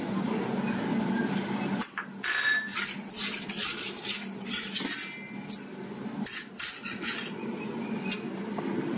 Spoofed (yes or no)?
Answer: no